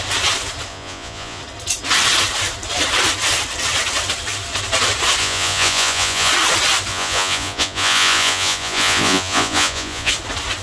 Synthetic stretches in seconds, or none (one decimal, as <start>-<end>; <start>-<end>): 0.7-1.4; 5.2-6.3; 6.9-10.1